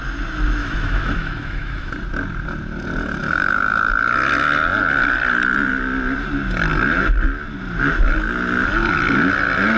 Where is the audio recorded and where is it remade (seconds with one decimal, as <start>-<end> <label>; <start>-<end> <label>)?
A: 0.0-0.6 recorded; 0.6-1.9 remade; 1.9-3.2 recorded; 3.2-3.9 remade; 3.9-9.8 recorded